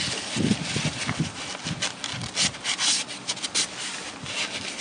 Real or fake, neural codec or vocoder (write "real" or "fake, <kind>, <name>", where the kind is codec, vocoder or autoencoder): real